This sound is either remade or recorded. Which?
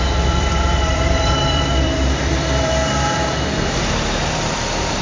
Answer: remade